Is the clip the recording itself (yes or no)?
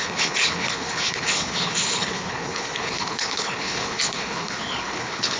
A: no